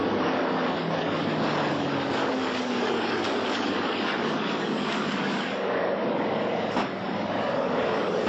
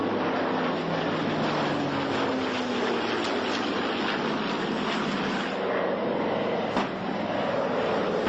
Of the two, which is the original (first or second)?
second